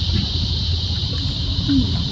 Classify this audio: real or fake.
fake